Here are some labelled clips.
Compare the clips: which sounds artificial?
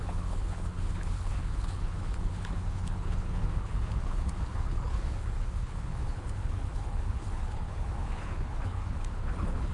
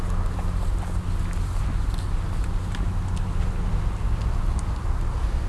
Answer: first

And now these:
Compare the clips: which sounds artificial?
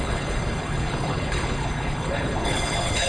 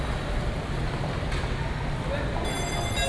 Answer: first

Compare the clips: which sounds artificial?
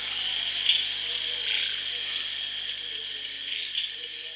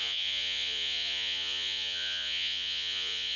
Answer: second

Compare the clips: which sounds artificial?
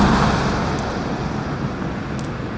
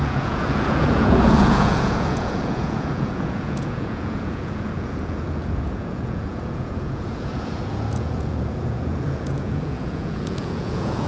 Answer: second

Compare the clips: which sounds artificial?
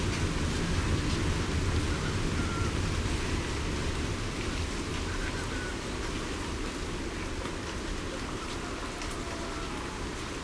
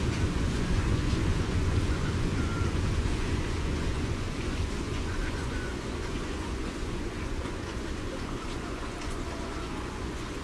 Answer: second